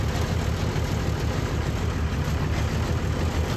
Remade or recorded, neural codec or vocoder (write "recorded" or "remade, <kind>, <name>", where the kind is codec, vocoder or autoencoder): recorded